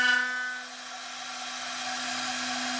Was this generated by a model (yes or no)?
no